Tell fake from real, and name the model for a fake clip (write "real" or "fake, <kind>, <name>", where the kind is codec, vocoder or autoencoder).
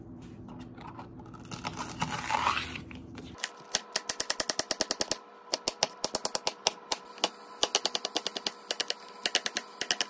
real